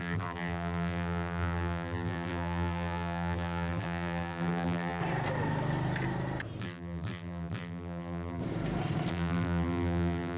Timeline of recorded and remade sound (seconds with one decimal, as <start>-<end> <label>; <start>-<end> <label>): 0.0-5.0 remade; 5.0-6.6 recorded; 6.6-8.4 remade; 8.4-9.1 recorded; 9.1-10.4 remade